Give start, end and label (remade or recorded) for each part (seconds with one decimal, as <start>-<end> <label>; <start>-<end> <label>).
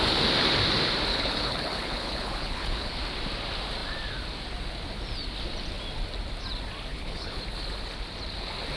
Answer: 0.0-1.1 recorded; 1.1-3.0 remade; 3.0-6.9 recorded; 6.9-7.4 remade; 7.4-8.8 recorded